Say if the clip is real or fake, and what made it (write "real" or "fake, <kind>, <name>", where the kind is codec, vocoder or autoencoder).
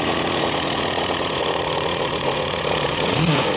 fake, vocoder, Vocos